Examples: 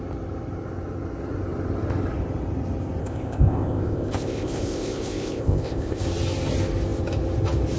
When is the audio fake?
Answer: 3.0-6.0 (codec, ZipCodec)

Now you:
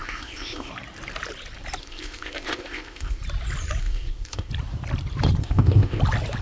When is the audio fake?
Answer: 0.0-0.7 (codec, ZipCodec); 1.8-3.2; 3.8-4.5; 5.4-6.0

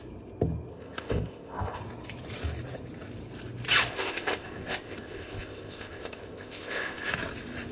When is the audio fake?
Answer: 0.7-1.8 (codec, ZipCodec); 3.9-7.1

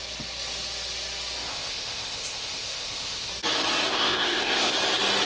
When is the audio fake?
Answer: 1.5-3.3 (codec, ZipCodec); 3.9-4.7

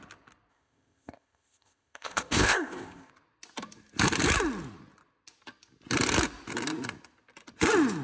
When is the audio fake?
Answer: 0.5-3.1 (codec, ZipCodec)

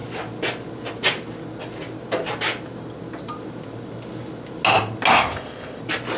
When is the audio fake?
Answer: 5.1-5.8 (codec, ZipCodec)

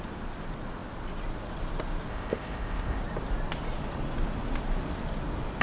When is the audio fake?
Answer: 2.1-3.0 (codec, ZipCodec)